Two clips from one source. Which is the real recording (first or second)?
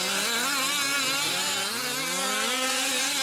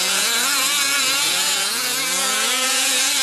first